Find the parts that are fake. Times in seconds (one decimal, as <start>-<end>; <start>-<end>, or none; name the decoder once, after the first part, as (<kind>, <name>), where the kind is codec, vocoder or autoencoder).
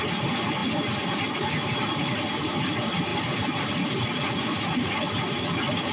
none